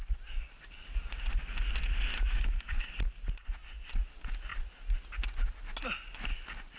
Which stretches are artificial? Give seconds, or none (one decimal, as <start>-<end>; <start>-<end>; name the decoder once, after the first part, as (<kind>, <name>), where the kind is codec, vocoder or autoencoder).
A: 2.1-2.9 (autoencoder, DAC-VAE)